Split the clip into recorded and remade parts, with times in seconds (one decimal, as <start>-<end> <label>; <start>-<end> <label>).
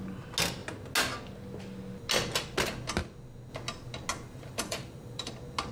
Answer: 0.0-4.1 recorded; 4.1-5.3 remade; 5.3-5.7 recorded